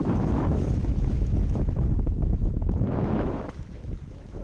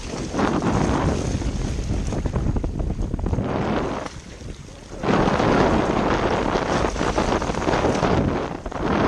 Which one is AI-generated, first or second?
first